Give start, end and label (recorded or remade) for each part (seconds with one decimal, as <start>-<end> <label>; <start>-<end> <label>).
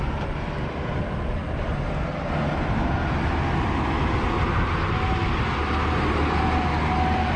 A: 0.0-7.4 recorded